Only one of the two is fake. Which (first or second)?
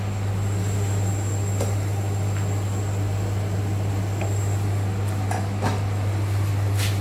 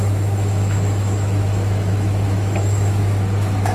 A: second